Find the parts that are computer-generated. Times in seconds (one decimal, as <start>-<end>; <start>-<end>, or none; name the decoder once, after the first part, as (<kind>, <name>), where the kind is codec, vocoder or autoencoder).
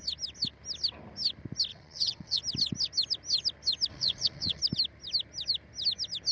1.7-2.4 (vocoder, WaveNeXt); 3.9-4.6